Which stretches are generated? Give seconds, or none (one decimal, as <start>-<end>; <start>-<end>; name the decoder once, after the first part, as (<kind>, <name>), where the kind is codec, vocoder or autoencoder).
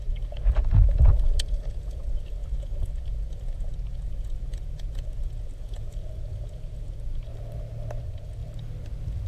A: 0.0-7.3 (vocoder, Vocos); 8.0-8.4